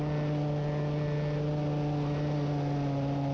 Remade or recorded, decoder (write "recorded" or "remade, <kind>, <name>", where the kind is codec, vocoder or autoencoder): recorded